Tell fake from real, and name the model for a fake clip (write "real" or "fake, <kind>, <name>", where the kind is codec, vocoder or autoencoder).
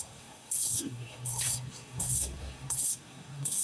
fake, codec, SNAC